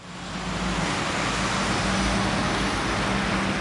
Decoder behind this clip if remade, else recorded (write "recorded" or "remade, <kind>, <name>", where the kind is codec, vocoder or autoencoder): recorded